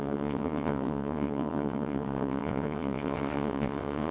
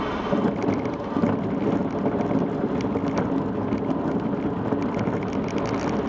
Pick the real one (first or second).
second